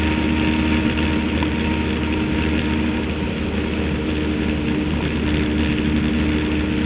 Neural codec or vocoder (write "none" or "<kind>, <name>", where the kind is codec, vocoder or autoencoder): none